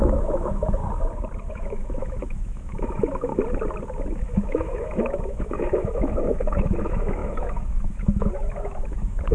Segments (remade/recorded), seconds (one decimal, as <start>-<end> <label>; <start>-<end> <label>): 0.0-0.8 remade; 0.8-1.5 recorded; 1.5-3.3 remade; 3.3-4.2 recorded; 4.2-9.3 remade